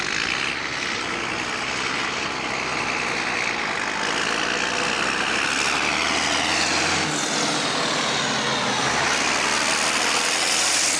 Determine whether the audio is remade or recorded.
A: recorded